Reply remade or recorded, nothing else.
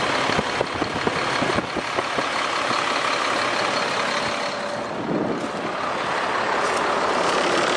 recorded